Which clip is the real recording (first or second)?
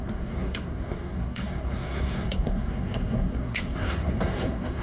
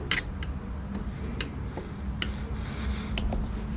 second